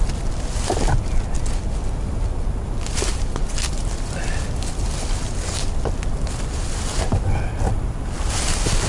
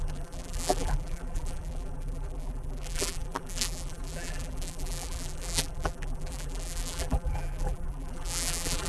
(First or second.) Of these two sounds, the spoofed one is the second